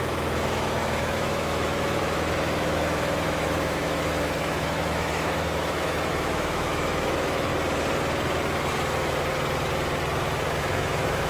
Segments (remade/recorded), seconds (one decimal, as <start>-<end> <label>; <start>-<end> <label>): 0.0-7.5 remade; 7.5-10.6 recorded; 10.6-11.3 remade